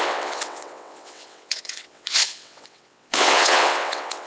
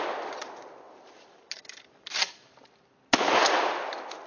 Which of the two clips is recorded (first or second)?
second